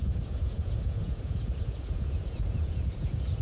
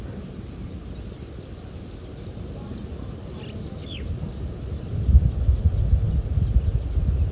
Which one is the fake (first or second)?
first